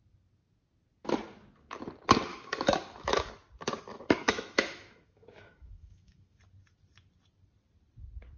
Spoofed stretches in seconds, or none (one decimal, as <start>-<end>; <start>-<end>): 2.3-3.3; 3.9-6.4